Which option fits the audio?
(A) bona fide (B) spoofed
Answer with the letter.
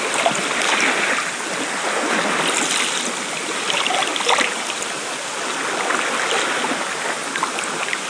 A